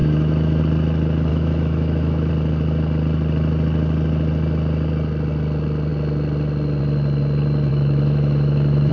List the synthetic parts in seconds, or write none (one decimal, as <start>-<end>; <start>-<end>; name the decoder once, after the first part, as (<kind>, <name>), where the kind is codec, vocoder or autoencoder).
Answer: 0.0-0.6 (autoencoder, DAC-VAE); 1.3-2.3; 7.7-8.9

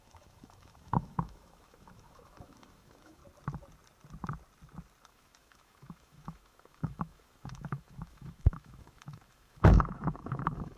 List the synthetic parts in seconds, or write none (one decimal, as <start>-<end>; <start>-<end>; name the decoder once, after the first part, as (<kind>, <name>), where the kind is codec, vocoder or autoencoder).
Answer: 0.0-3.2 (autoencoder, DAC-VAE); 5.0-10.8